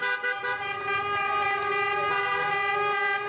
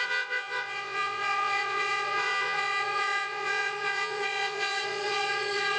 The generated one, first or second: second